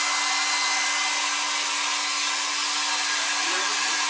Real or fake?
real